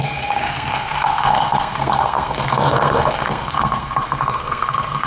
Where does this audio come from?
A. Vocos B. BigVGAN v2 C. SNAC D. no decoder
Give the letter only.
C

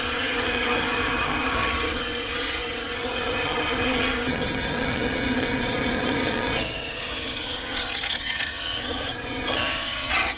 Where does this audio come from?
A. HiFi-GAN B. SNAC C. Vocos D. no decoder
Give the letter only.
A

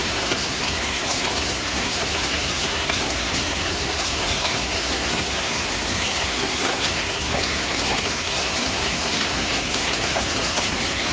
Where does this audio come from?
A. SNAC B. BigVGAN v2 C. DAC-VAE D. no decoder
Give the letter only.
A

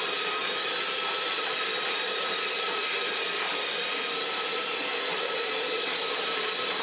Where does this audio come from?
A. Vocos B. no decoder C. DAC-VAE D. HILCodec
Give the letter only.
B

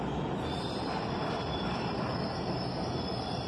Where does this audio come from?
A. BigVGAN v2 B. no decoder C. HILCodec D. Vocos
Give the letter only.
A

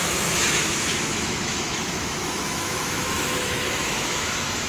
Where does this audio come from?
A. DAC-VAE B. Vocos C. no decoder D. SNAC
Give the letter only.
A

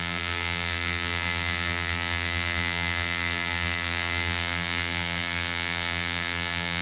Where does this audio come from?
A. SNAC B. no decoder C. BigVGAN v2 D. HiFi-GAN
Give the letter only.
C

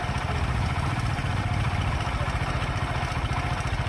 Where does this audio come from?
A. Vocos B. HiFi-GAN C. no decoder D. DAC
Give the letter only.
C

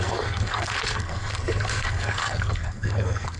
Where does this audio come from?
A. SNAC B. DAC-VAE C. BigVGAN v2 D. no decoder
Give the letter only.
A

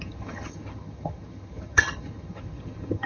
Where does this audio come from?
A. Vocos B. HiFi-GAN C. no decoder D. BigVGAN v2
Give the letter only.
B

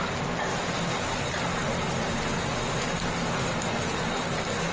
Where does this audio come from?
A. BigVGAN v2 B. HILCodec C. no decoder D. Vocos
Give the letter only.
C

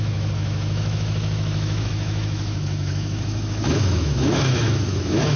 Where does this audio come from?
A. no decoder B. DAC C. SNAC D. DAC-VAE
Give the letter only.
D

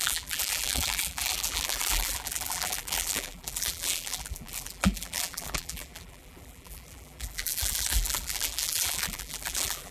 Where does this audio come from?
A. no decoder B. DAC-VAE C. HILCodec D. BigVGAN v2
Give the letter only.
D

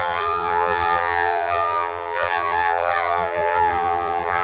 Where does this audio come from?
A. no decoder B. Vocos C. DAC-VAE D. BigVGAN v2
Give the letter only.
D